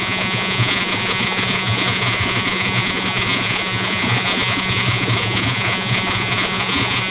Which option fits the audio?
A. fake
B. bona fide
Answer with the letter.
A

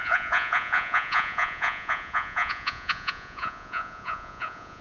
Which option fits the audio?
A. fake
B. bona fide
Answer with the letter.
A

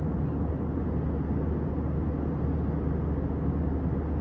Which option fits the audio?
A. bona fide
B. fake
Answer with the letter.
A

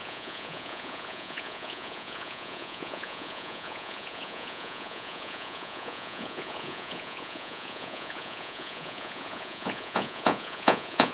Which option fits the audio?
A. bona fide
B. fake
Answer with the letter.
B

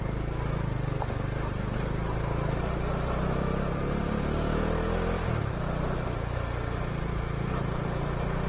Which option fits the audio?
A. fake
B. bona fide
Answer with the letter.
B